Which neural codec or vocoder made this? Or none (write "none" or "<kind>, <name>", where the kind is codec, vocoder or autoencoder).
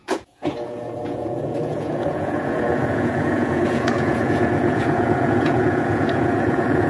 vocoder, Vocos